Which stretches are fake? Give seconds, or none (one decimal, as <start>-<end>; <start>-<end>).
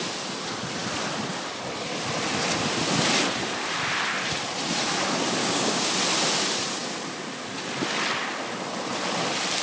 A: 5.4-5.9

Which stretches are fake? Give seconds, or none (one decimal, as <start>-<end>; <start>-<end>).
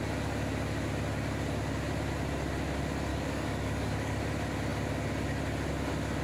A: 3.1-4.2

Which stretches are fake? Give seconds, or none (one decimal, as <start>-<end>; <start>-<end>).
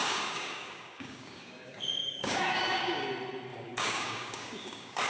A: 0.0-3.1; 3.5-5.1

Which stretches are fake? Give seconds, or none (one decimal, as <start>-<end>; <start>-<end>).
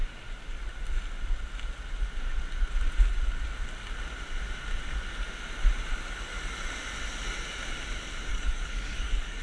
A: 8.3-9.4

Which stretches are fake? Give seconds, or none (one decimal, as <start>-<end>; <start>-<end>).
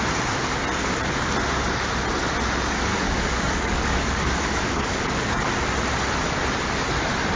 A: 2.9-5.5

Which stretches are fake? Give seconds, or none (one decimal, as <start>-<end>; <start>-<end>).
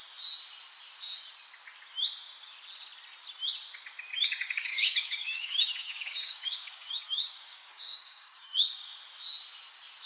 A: 4.1-9.0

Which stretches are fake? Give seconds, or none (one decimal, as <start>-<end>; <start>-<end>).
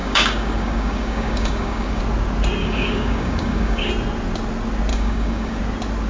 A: 0.0-2.0; 2.6-3.9; 4.9-5.6